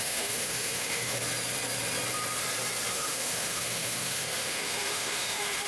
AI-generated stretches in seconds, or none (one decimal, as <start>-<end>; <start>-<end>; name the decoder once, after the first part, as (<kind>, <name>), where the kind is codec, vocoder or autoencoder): 0.0-1.2 (autoencoder, DAC-VAE); 2.9-5.7